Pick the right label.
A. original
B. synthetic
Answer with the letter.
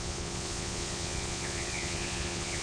B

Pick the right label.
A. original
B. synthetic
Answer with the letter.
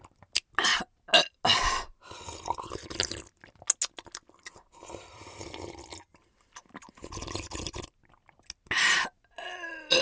A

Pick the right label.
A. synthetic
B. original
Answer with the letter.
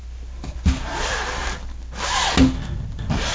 B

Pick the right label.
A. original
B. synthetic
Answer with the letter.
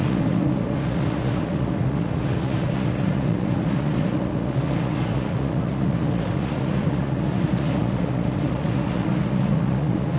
B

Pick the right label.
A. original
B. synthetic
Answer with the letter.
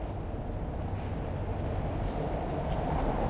A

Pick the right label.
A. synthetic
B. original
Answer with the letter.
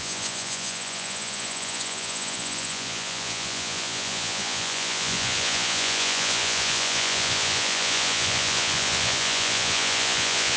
A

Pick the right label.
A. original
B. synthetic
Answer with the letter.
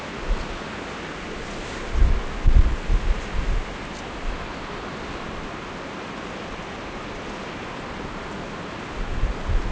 A